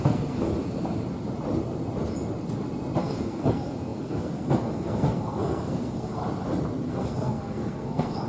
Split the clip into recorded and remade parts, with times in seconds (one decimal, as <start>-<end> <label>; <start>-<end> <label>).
0.0-0.5 remade; 0.5-3.0 recorded; 3.0-6.2 remade; 6.2-6.9 recorded; 6.9-8.3 remade